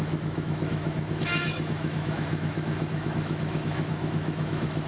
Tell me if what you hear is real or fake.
fake